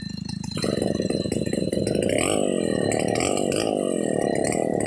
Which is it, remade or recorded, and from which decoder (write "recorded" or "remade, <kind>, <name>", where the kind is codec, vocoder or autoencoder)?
recorded